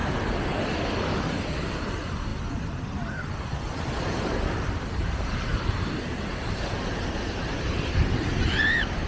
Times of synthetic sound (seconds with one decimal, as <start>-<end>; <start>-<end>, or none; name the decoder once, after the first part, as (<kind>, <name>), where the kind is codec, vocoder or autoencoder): 1.2-2.3 (vocoder, BigVGAN v2); 4.0-9.1